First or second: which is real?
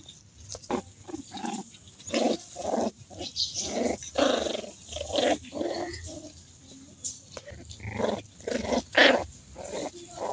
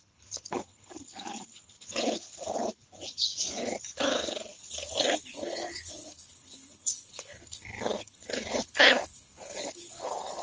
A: first